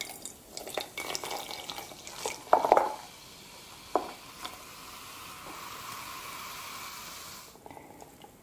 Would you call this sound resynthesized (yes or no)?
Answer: no